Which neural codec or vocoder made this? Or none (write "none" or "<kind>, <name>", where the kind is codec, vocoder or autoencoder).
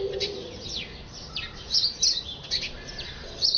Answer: none